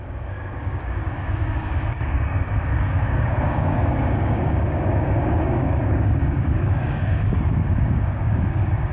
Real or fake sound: fake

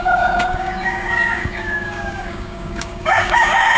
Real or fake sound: fake